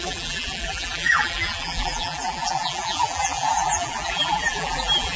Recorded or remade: remade